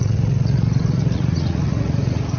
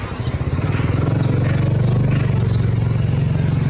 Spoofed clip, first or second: first